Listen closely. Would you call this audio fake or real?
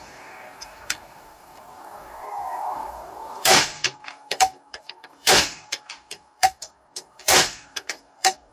fake